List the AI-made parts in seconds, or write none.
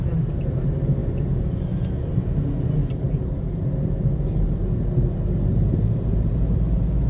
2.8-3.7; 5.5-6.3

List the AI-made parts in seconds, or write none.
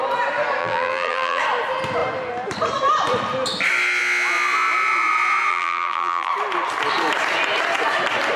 0.6-1.4; 5.5-6.3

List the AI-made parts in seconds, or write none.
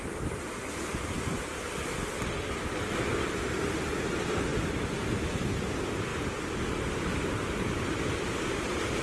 0.0-4.5; 5.5-6.1; 6.7-9.0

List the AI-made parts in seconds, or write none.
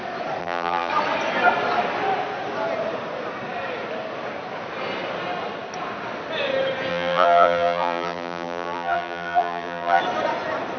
0.4-0.9; 6.9-10.0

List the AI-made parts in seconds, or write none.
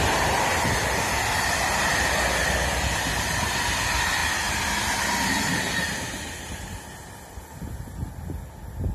none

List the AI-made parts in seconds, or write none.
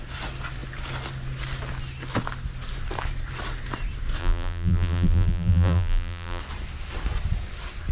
4.2-6.4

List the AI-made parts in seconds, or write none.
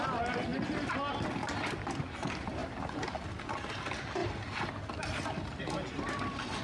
2.6-3.6; 4.2-5.7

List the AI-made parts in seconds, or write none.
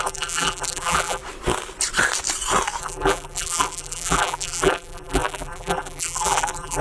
0.0-1.2; 2.8-6.8